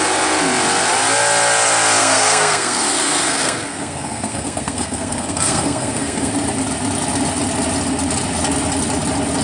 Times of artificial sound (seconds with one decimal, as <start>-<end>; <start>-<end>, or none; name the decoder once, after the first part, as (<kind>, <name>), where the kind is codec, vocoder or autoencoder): 2.0-6.3 (codec, SNAC)